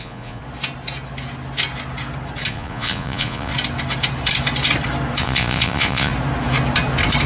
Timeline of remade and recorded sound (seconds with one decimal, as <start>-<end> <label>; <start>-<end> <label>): 0.0-0.4 remade; 0.4-2.5 recorded; 2.5-3.5 remade; 3.5-5.2 recorded; 5.2-6.1 remade; 6.1-7.3 recorded